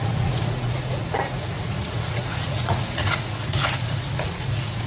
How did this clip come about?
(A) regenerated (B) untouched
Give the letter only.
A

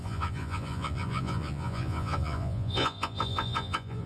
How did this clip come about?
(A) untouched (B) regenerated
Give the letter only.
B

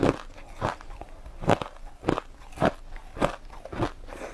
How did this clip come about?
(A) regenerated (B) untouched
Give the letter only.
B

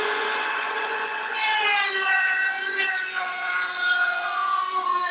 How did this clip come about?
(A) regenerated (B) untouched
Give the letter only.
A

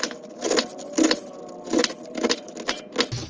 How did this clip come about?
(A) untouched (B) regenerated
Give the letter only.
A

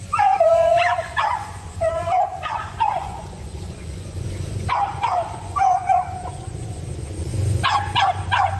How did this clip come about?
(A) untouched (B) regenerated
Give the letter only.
B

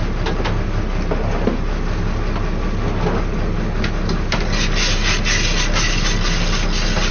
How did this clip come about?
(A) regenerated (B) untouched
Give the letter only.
B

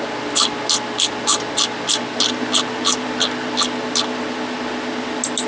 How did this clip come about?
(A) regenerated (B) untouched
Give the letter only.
B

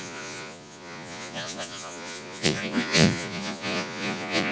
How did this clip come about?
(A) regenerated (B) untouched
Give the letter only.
A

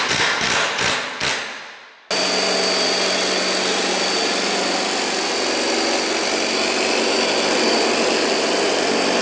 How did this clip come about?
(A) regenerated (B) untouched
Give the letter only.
B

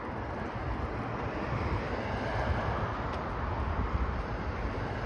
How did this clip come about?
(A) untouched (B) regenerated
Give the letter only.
A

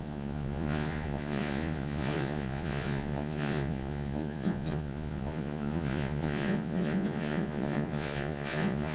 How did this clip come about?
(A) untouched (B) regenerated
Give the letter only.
B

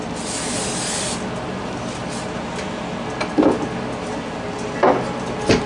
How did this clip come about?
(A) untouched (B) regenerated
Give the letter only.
A